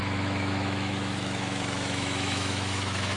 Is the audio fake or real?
fake